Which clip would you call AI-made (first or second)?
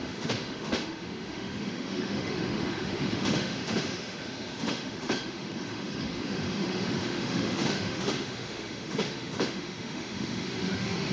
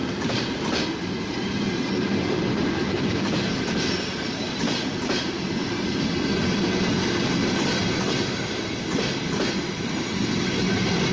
first